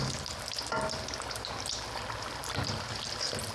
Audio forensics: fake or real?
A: real